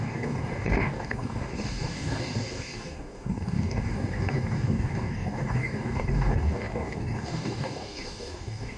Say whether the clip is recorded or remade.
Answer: remade